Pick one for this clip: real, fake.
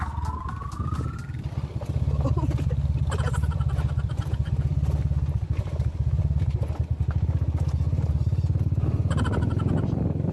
real